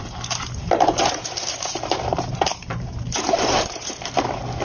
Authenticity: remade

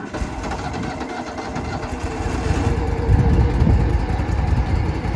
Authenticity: recorded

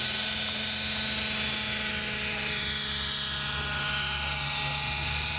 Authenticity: recorded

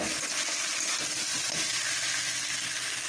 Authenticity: recorded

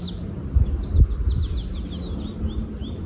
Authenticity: recorded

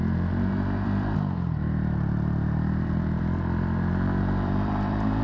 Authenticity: remade